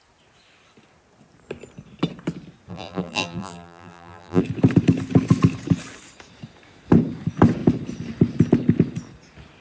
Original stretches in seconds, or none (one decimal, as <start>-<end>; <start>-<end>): 0.0-2.7; 4.4-9.6